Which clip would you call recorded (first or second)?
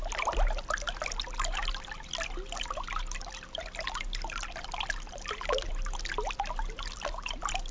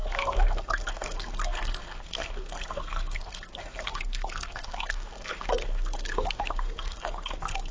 first